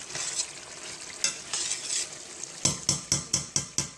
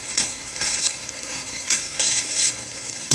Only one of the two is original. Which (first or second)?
first